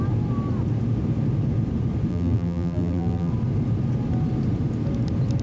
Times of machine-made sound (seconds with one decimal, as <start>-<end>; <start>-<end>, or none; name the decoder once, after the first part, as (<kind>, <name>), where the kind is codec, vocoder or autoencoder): 2.1-3.3 (vocoder, BigVGAN v2)